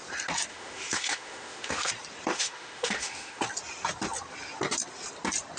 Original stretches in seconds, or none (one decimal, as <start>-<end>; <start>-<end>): 0.0-0.5; 1.9-2.3; 3.4-5.6